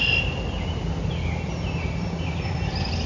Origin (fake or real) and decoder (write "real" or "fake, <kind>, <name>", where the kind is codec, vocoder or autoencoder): real